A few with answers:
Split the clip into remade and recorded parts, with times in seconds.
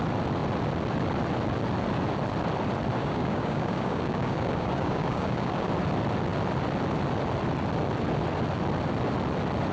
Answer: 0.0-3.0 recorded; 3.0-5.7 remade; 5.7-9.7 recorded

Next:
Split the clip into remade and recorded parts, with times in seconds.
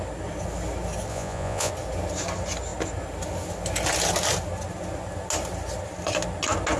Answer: 0.0-1.1 recorded; 1.1-1.7 remade; 1.7-6.8 recorded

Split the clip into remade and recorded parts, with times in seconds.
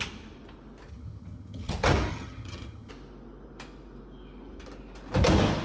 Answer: 0.0-0.9 recorded; 0.9-1.7 remade; 1.7-2.1 recorded; 2.1-2.9 remade; 2.9-5.6 recorded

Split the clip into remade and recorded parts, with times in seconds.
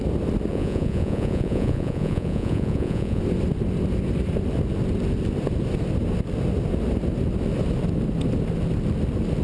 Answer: 0.0-0.5 recorded; 0.5-3.2 remade; 3.2-9.4 recorded